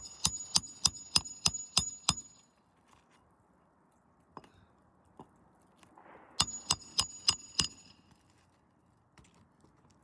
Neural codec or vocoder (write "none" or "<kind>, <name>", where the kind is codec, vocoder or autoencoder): none